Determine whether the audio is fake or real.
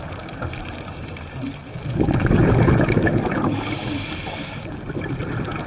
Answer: real